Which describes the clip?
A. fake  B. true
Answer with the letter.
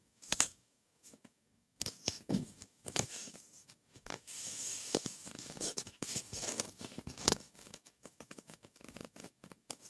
A